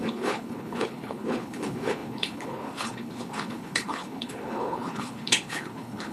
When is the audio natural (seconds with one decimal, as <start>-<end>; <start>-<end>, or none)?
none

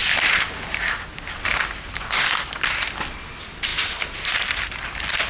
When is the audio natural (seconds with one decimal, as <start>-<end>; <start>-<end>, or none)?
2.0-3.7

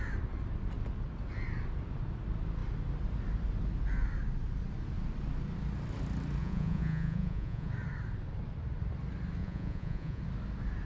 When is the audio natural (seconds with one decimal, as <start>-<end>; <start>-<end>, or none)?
0.0-6.4; 7.7-9.4; 10.2-10.9